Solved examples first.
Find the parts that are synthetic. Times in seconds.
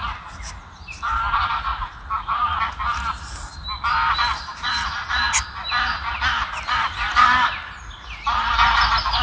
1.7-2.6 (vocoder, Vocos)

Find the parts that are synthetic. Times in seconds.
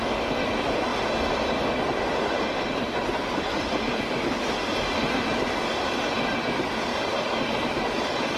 none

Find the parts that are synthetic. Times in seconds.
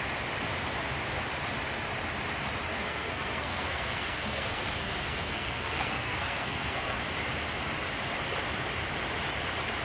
2.7-7.0 (codec, SNAC)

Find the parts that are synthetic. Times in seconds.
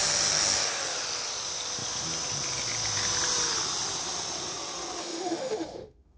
5.0-6.2 (autoencoder, DAC-VAE)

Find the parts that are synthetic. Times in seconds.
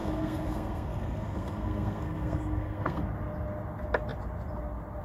0.0-3.0 (codec, SNAC)